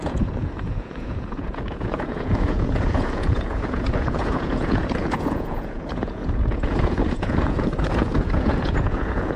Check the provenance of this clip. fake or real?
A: fake